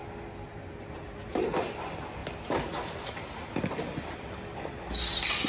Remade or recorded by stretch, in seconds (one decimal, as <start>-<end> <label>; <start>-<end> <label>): 0.0-5.5 recorded